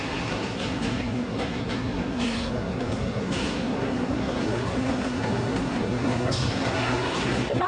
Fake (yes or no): yes